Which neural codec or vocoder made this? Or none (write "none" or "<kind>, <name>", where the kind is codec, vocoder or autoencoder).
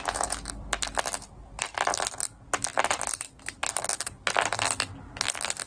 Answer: none